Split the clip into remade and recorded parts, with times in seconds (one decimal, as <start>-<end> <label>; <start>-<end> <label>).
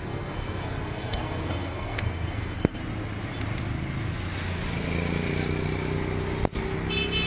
0.0-2.8 remade; 2.8-7.3 recorded